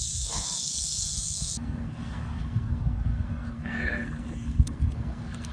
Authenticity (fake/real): fake